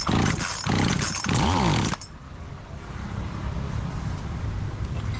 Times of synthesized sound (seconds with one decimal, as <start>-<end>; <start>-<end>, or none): 0.5-3.4